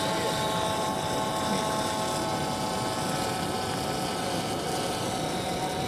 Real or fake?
real